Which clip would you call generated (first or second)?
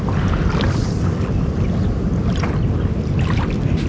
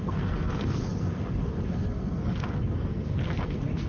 second